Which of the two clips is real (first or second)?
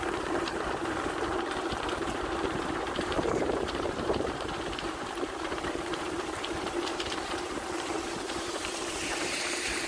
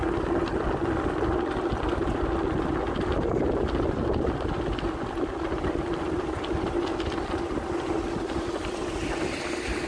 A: second